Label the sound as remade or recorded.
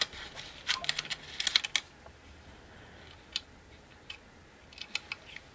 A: recorded